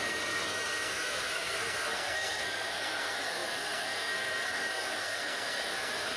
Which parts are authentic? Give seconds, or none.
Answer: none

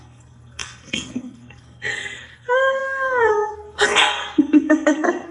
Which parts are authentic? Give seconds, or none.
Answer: none

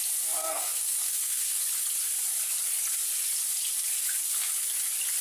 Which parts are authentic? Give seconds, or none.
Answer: 0.0-0.4; 1.6-5.2

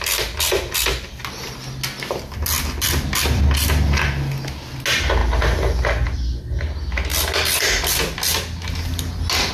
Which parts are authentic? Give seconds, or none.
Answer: 0.0-9.5

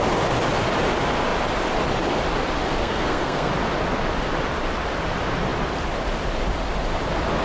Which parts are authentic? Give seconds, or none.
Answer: 0.0-2.8; 3.5-7.4

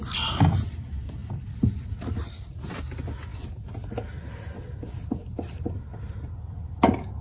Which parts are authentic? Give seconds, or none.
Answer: 0.0-7.2

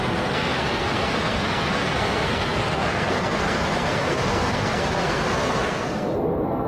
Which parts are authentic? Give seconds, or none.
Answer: none

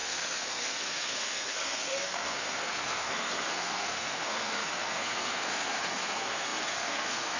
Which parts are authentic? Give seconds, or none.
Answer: none